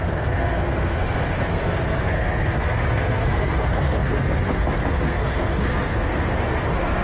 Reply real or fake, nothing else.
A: fake